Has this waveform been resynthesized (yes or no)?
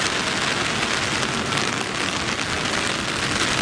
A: no